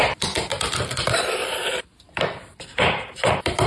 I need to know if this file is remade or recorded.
remade